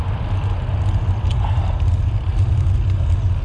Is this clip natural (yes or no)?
yes